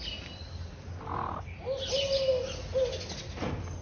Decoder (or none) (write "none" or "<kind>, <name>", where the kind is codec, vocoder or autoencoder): none